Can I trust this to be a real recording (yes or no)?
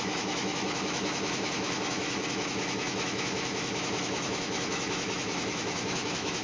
no